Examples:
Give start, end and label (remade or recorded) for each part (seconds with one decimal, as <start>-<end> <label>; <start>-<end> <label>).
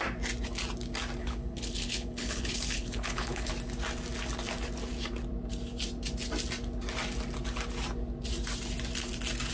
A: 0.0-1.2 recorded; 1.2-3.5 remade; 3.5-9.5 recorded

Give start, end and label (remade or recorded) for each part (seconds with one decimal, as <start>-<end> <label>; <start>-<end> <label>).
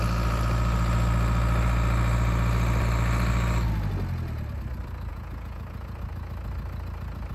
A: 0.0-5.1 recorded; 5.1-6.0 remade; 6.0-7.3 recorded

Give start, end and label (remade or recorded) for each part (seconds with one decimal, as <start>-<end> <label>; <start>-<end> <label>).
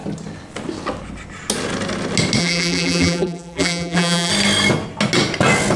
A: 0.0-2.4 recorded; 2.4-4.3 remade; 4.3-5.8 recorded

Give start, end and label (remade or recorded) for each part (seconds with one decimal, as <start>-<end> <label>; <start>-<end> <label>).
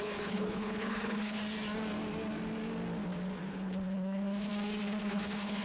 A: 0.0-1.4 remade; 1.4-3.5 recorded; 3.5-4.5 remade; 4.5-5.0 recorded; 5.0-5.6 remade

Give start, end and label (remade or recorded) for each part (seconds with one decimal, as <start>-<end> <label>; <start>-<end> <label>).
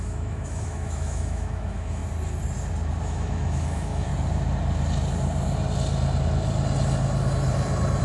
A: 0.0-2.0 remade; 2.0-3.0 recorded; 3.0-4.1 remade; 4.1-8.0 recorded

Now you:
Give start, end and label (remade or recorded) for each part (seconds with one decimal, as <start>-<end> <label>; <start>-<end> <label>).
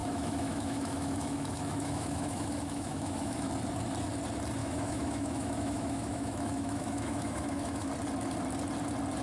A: 0.0-3.5 remade; 3.5-4.6 recorded; 4.6-7.9 remade; 7.9-9.2 recorded